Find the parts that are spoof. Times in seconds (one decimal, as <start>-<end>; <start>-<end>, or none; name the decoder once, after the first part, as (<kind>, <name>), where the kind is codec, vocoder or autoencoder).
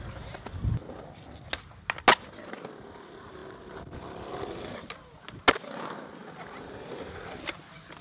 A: none